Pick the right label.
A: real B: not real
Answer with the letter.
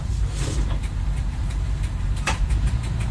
B